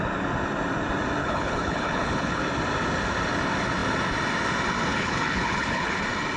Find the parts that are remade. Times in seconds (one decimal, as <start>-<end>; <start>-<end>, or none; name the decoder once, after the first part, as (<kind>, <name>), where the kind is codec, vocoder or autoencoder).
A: 1.2-2.4 (codec, HILCodec); 4.9-6.0